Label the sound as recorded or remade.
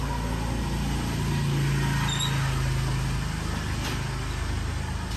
recorded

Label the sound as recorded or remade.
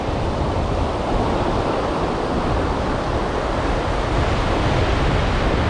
recorded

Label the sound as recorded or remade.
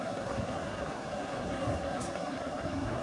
remade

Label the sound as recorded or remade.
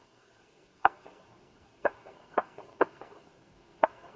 remade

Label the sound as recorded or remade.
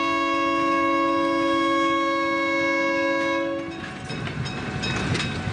recorded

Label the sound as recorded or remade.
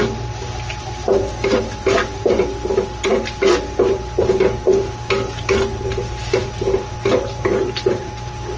recorded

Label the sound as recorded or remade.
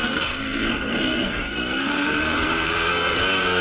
remade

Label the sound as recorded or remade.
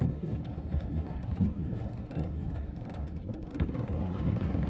remade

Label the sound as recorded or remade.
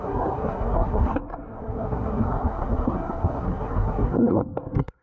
remade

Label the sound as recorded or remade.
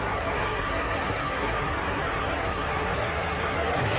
remade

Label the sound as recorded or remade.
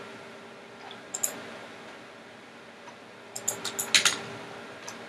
recorded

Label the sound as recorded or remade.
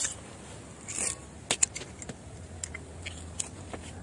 recorded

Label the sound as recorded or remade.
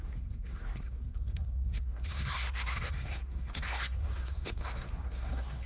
remade